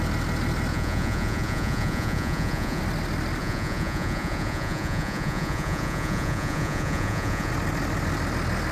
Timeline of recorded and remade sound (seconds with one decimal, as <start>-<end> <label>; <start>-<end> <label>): 0.0-0.7 recorded; 0.7-2.8 remade; 2.8-3.4 recorded; 3.4-7.5 remade; 7.5-8.7 recorded